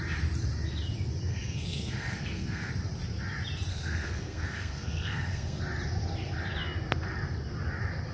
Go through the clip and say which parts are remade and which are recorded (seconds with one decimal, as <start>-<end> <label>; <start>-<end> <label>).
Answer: 0.0-1.3 recorded; 1.3-2.7 remade; 2.7-3.7 recorded; 3.7-5.6 remade; 5.6-8.1 recorded